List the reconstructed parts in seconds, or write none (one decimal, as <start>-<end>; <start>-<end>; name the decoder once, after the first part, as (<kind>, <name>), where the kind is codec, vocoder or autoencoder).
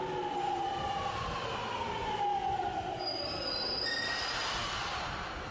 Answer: none